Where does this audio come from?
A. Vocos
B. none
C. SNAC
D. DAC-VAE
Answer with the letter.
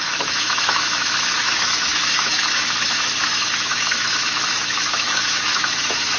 D